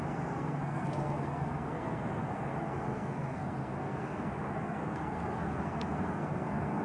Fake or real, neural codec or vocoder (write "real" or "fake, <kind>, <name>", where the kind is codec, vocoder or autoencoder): fake, codec, SNAC